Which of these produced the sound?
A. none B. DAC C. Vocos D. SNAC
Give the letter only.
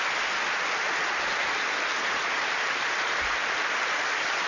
A